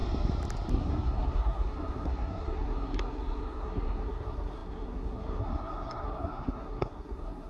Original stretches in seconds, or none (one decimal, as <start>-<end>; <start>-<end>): 0.0-0.7